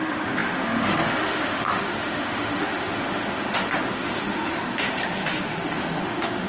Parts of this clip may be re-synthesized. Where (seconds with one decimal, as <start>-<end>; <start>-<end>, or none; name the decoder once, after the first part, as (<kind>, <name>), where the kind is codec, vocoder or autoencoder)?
0.0-6.5 (autoencoder, DAC-VAE)

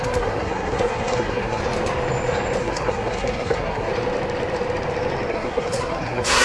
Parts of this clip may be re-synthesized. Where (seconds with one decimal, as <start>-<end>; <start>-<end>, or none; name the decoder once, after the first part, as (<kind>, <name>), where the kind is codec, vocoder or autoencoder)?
0.0-1.6 (codec, SNAC); 2.6-3.9; 5.3-6.4

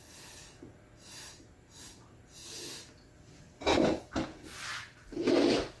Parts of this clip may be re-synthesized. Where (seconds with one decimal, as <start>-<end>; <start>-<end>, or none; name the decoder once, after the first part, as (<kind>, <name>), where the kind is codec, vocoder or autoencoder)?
2.4-2.9 (autoencoder, DAC-VAE)

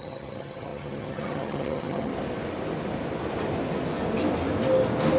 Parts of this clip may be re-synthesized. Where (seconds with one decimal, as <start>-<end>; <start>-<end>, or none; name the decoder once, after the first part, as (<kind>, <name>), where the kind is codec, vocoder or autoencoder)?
0.0-2.1 (vocoder, HiFi-GAN)